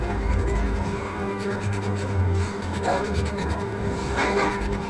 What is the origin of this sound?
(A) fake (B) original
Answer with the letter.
A